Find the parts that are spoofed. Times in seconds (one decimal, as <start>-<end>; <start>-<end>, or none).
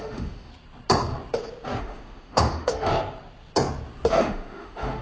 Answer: 0.0-0.5; 1.8-2.9; 4.1-5.0